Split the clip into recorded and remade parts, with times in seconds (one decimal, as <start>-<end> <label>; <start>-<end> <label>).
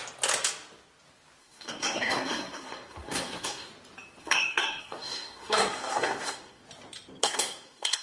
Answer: 0.0-1.4 recorded; 1.4-3.7 remade; 3.7-4.2 recorded; 4.2-6.6 remade; 6.6-7.2 recorded; 7.2-8.0 remade